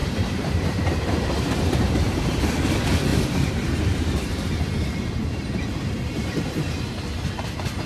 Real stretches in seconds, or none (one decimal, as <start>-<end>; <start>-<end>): 2.4-3.1; 6.8-7.9